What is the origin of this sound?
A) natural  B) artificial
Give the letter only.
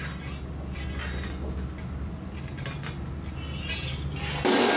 A